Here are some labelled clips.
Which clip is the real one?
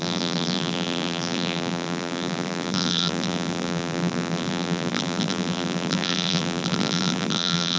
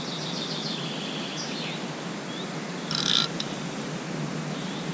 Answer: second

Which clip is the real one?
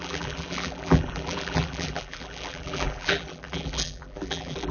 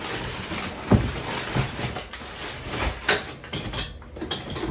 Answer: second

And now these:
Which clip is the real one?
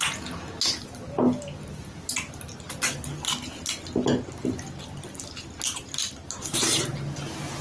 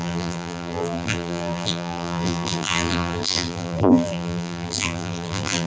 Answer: first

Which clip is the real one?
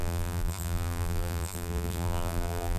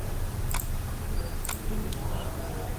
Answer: second